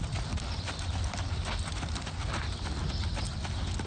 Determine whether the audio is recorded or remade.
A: recorded